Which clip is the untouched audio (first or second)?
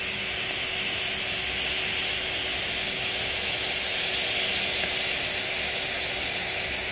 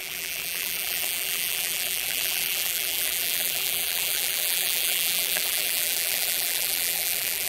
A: first